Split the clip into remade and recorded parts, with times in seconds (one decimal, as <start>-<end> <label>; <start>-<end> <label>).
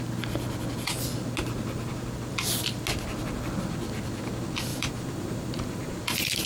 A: 0.0-4.7 recorded; 4.7-6.0 remade; 6.0-6.5 recorded